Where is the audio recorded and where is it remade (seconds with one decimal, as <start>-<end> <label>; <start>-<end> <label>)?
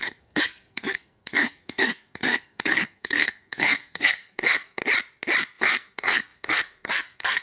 0.0-4.8 remade; 4.8-5.6 recorded; 5.6-7.4 remade